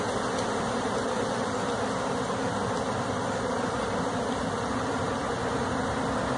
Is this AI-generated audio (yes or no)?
no